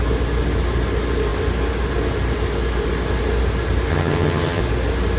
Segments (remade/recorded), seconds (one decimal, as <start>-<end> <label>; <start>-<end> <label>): 0.0-3.9 recorded; 3.9-4.6 remade; 4.6-5.2 recorded